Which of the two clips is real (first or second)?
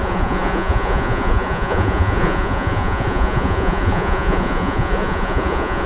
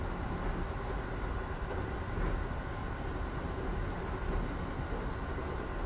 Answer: second